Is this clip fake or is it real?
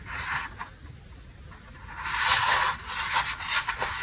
real